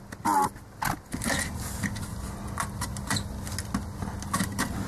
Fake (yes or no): no